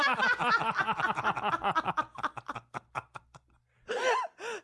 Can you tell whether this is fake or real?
real